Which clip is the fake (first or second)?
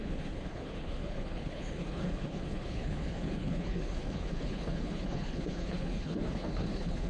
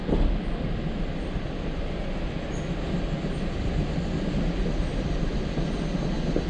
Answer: first